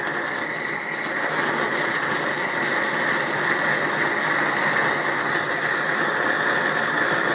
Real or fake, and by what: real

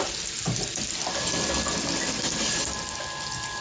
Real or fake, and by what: real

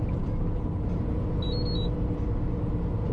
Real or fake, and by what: real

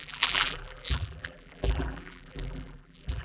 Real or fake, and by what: fake, vocoder, BigVGAN v2